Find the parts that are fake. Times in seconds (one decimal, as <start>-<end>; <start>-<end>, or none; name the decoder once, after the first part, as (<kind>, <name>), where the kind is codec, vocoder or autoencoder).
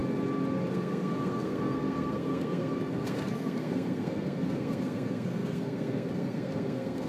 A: 0.7-7.1 (codec, SNAC)